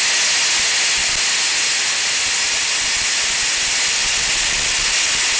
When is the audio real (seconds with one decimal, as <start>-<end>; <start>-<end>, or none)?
0.0-5.4